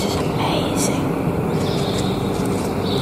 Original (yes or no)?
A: no